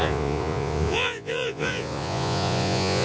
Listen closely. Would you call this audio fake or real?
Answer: fake